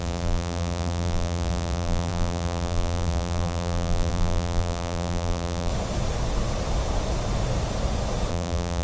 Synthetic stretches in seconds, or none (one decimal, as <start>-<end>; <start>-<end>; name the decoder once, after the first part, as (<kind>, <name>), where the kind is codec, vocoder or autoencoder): 0.0-5.7 (vocoder, BigVGAN v2); 8.3-8.8